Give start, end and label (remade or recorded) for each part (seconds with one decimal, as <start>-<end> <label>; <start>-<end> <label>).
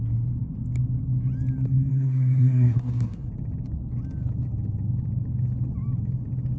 0.0-1.9 recorded; 1.9-3.3 remade; 3.3-6.6 recorded